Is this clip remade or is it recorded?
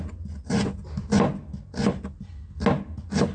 recorded